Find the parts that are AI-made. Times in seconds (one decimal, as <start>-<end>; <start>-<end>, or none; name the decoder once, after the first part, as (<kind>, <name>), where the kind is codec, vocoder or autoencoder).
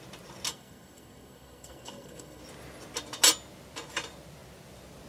0.5-2.4 (codec, SNAC)